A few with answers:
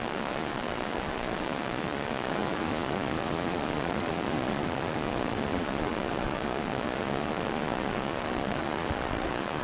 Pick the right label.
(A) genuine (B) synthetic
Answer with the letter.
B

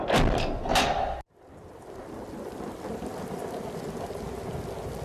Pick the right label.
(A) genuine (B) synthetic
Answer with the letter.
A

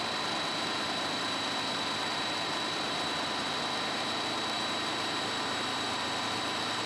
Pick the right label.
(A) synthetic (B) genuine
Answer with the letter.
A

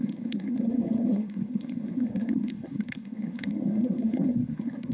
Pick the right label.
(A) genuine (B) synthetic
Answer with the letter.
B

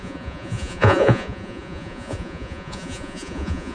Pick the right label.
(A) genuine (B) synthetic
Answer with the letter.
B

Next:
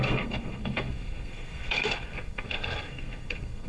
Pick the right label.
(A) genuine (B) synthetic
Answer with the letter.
B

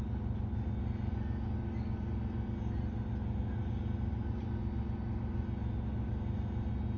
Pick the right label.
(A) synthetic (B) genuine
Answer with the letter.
B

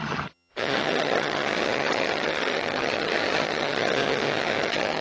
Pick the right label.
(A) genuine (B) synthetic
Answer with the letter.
B